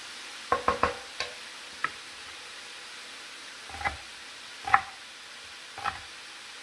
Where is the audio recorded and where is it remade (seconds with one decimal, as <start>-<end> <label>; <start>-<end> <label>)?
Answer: 0.0-6.6 recorded